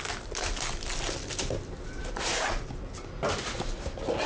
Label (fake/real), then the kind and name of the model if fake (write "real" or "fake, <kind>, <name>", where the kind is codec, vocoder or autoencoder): real